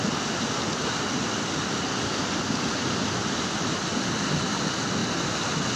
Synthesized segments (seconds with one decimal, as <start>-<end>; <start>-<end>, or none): none